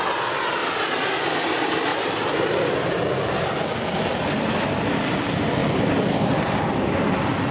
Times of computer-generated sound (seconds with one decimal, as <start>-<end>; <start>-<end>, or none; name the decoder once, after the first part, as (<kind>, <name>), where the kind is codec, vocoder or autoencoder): 1.9-2.7 (vocoder, BigVGAN v2); 4.1-5.0; 5.6-7.5